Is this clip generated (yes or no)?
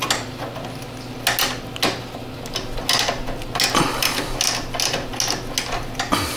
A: no